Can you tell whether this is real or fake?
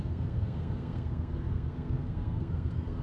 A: fake